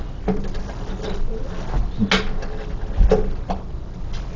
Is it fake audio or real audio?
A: real